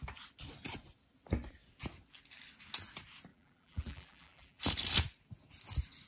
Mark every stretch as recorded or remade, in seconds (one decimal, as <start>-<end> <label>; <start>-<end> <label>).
0.0-3.3 recorded; 3.3-4.6 remade; 4.6-6.1 recorded